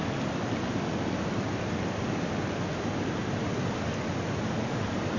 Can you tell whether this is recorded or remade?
recorded